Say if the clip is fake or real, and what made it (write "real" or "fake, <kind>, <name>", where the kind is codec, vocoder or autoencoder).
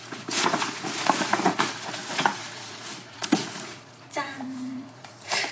fake, vocoder, Vocos